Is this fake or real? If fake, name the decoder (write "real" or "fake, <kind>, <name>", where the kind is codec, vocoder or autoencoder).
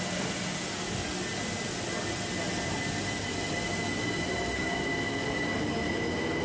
real